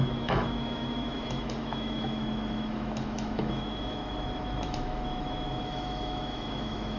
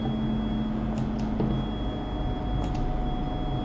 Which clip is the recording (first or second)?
second